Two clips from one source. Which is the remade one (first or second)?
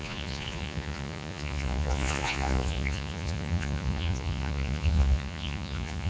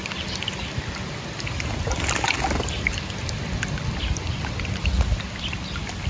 first